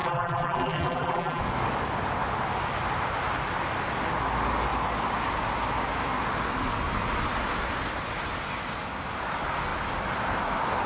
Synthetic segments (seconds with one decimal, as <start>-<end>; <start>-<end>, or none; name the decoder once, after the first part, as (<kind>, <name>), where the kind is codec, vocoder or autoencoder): 0.0-1.4 (vocoder, BigVGAN v2)